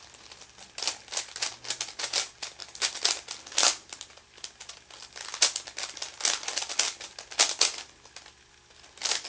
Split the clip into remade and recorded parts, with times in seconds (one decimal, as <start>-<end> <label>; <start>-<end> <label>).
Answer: 0.0-9.3 recorded